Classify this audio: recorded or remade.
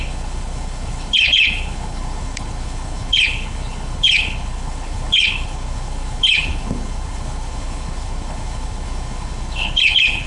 remade